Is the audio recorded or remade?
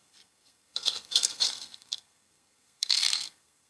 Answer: remade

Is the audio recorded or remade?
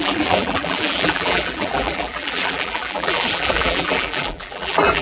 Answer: remade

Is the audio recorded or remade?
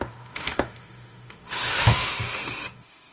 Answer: remade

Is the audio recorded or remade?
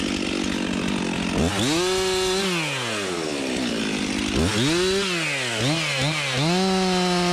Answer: recorded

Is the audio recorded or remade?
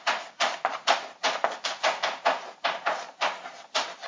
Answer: recorded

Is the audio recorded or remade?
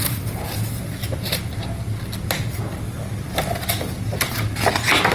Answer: recorded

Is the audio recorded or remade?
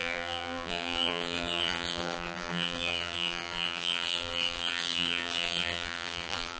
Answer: remade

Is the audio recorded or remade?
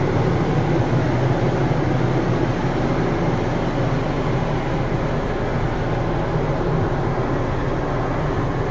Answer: recorded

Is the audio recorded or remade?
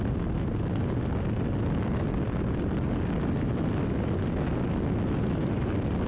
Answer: recorded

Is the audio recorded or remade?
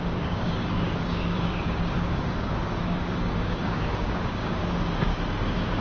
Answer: remade